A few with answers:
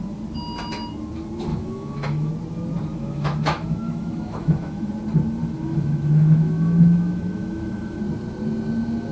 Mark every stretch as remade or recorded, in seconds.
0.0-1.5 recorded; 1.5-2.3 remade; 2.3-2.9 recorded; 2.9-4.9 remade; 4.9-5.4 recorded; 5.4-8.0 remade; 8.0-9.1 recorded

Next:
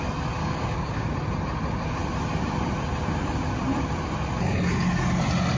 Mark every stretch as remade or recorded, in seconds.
0.0-0.4 recorded; 0.4-1.0 remade; 1.0-5.6 recorded

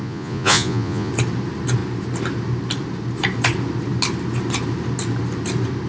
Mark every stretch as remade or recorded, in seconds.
0.0-1.1 remade; 1.1-5.9 recorded